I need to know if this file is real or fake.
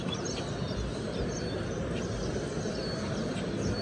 real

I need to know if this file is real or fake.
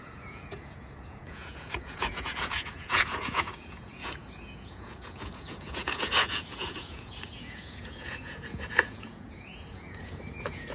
fake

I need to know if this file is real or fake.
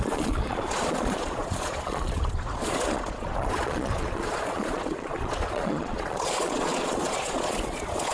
fake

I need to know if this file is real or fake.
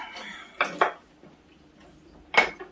real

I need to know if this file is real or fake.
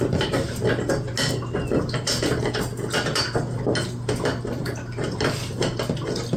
real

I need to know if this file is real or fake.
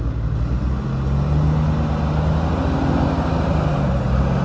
real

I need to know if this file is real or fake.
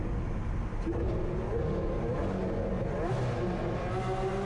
real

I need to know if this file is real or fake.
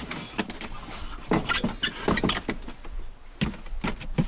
real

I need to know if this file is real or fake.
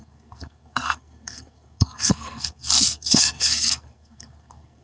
fake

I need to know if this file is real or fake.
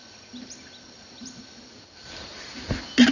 real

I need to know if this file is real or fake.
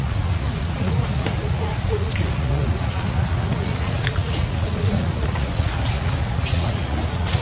fake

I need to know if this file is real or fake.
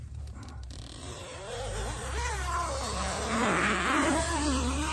fake